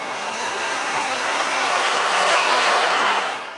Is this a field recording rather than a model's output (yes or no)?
no